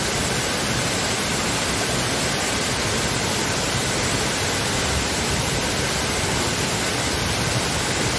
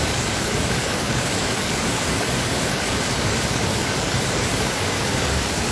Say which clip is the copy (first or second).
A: second